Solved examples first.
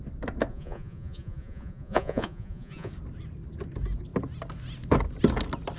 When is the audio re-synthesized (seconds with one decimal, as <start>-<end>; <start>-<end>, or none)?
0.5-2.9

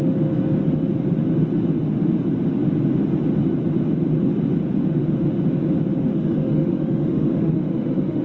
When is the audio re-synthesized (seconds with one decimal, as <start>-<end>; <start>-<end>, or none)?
6.1-8.2

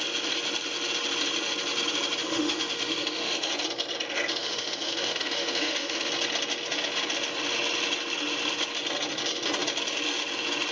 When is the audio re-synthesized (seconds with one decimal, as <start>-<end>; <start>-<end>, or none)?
2.2-3.5; 4.4-6.1

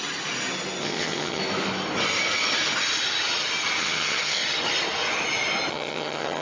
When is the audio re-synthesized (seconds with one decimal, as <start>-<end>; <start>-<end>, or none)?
0.8-1.4; 3.8-4.4; 5.7-6.4

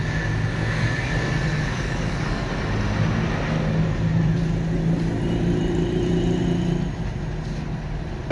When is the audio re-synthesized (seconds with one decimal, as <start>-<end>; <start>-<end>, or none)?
1.5-2.5

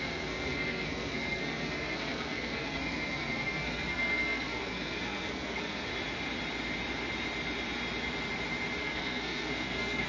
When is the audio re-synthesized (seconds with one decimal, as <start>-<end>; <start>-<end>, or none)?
0.0-5.9; 8.8-10.1

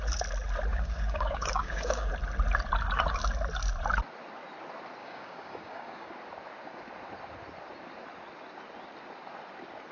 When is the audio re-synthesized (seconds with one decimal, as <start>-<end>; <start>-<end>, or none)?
0.7-2.1; 5.0-6.1

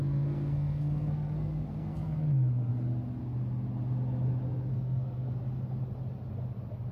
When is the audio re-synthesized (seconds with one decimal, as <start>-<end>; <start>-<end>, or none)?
0.0-2.7; 4.7-5.3